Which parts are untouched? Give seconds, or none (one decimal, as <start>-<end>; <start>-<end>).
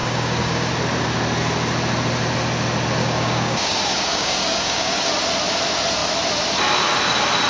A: 0.7-3.0; 5.1-7.5